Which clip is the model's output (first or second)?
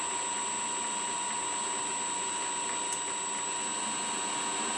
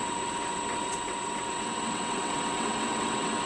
second